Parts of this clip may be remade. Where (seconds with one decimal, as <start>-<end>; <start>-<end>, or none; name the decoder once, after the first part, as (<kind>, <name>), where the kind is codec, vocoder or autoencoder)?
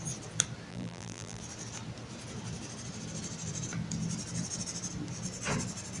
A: 0.7-1.4 (vocoder, BigVGAN v2)